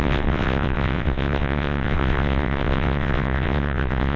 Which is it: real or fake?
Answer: fake